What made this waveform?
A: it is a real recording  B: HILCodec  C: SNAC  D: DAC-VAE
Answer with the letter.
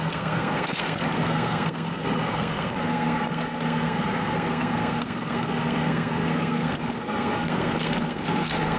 C